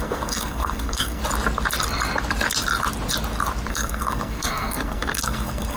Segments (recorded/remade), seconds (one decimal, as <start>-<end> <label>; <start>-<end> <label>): 0.0-1.2 remade; 1.2-3.7 recorded; 3.7-5.8 remade